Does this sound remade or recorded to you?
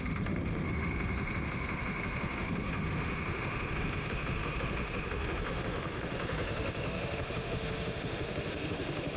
remade